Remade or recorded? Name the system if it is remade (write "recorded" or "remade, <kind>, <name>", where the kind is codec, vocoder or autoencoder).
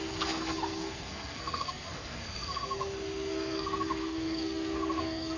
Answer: remade, codec, SNAC